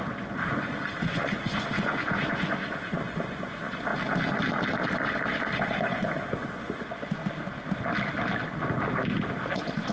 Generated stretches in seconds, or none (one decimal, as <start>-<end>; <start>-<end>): 0.0-3.9; 5.6-7.2; 9.5-9.9